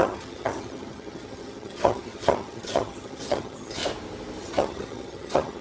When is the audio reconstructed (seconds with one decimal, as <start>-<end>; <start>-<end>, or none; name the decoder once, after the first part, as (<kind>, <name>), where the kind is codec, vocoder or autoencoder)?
0.0-3.8 (vocoder, HiFi-GAN); 4.4-5.6